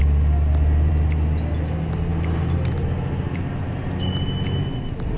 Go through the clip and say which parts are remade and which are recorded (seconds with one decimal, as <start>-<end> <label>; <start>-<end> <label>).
0.0-5.2 recorded